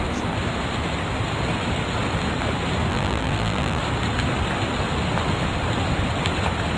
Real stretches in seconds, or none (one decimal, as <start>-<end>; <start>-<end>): 0.0-2.9; 3.8-6.8